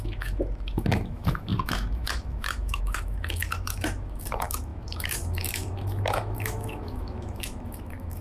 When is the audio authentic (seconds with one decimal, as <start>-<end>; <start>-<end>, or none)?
none